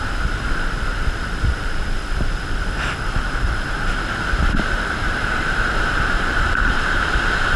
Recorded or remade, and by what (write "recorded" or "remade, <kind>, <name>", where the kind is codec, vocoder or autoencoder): remade, vocoder, BigVGAN v2